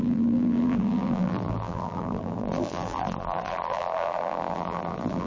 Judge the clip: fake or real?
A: fake